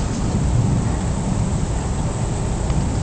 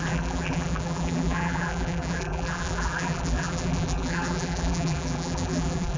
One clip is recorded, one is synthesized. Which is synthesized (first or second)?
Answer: second